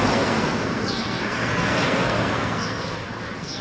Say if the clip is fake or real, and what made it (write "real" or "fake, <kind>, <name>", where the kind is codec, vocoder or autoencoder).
fake, codec, SNAC